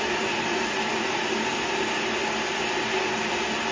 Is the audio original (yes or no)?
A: yes